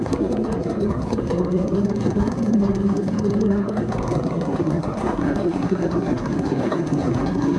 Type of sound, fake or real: fake